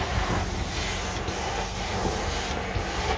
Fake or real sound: real